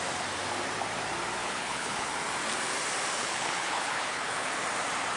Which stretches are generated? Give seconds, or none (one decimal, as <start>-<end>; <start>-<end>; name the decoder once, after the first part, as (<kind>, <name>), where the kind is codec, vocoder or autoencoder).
1.4-2.1 (codec, HILCodec); 3.2-4.5